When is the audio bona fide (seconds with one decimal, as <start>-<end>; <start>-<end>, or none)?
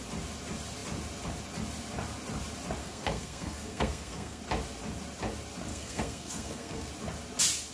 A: 0.0-2.8; 4.4-5.7; 6.9-7.7